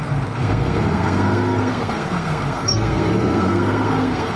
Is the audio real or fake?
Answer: fake